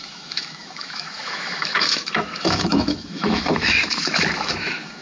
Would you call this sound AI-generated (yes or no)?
yes